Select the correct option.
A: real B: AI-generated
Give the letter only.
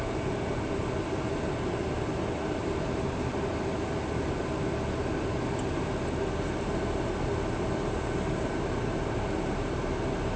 A